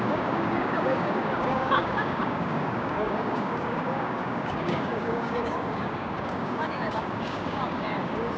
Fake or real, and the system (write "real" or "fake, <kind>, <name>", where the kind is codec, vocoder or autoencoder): fake, codec, DAC